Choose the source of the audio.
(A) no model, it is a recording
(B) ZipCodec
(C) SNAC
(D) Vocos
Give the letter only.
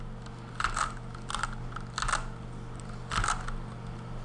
A